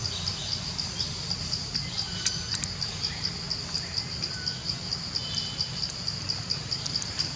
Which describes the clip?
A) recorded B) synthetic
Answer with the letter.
A